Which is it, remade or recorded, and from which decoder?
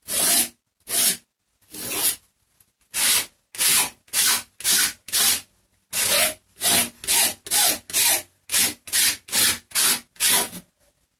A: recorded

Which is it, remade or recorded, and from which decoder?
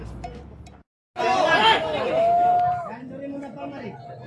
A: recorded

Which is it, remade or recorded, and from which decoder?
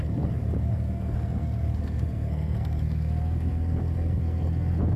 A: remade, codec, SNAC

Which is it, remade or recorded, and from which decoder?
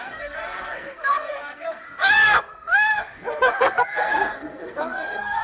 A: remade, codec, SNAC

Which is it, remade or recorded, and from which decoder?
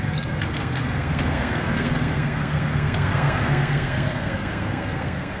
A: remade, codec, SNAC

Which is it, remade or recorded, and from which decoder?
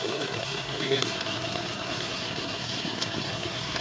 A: remade, codec, SNAC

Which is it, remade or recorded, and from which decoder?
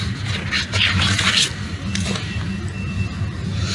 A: recorded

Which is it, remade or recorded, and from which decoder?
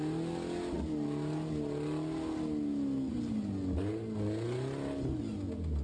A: recorded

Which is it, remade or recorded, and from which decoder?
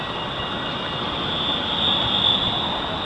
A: recorded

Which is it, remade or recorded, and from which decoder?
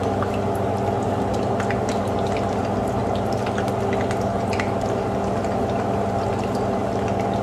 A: recorded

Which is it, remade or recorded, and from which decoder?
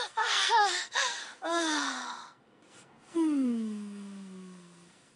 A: remade, codec, SNAC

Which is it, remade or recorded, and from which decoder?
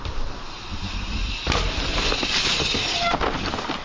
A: recorded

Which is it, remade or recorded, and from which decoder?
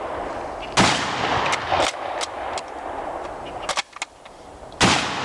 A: recorded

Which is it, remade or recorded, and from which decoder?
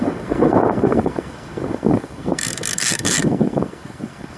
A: remade, codec, SNAC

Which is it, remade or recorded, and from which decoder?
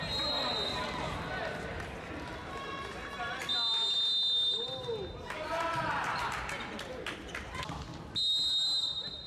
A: recorded